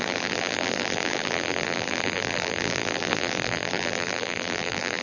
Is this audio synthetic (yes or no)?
yes